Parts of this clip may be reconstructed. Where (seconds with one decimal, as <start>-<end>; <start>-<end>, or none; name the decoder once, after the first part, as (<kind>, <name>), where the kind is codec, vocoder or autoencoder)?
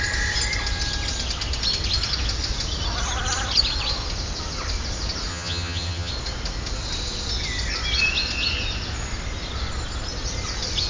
5.3-6.1 (vocoder, HiFi-GAN)